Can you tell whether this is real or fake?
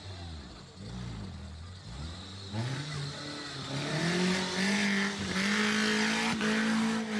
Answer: real